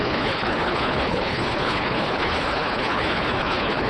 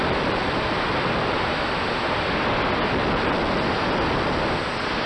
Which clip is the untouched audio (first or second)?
second